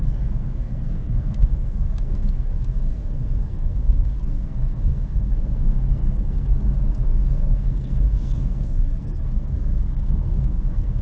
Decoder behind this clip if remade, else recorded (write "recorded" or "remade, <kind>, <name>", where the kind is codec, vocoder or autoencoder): remade, codec, SNAC